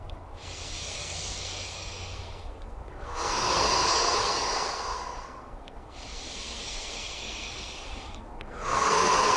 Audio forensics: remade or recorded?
remade